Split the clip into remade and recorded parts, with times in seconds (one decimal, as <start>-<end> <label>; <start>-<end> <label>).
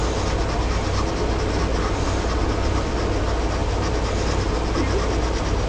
0.0-1.7 recorded; 1.7-2.9 remade; 2.9-5.7 recorded